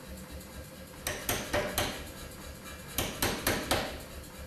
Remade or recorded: recorded